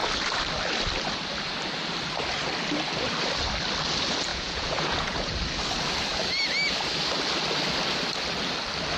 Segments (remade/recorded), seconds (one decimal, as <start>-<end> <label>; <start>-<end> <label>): 0.0-4.3 recorded; 4.3-5.3 remade; 5.3-9.0 recorded